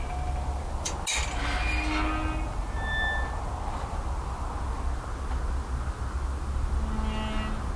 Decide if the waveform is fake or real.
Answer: real